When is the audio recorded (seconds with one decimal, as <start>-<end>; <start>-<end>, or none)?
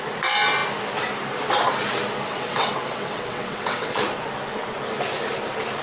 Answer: 0.0-2.3; 4.0-5.8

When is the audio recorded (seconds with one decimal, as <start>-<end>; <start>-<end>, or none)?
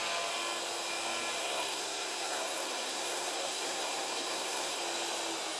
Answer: 0.0-1.4; 4.8-5.6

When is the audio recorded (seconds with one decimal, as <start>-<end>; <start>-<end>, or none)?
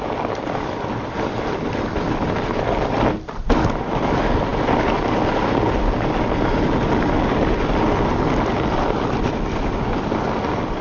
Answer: 0.0-10.8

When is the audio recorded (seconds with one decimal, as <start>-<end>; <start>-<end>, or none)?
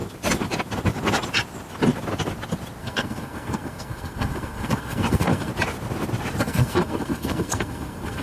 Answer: 0.0-2.8; 5.5-6.4